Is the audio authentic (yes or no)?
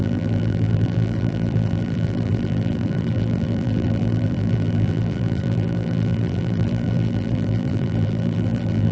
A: no